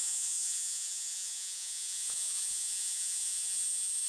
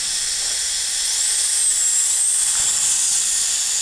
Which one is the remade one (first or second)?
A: first